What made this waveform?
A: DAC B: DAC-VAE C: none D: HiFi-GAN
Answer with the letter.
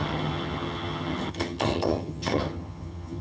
D